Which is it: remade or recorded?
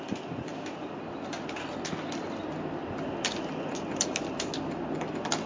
recorded